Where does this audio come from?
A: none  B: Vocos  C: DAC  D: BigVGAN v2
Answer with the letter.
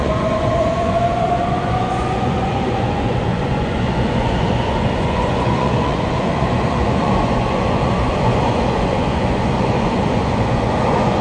B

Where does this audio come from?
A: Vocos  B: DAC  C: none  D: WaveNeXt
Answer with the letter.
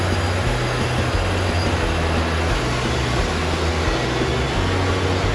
C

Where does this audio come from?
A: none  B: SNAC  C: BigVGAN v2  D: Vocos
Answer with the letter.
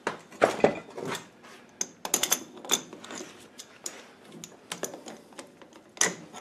A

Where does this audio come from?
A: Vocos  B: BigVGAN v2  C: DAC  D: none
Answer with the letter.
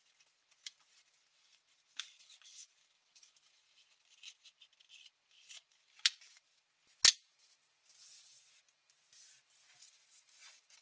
D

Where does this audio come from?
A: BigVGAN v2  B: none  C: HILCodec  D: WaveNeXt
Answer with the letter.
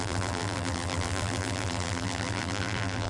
A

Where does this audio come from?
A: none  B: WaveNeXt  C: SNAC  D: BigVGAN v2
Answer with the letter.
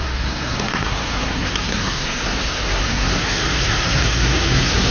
C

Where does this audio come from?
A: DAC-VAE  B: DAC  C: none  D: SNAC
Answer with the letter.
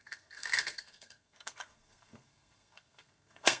D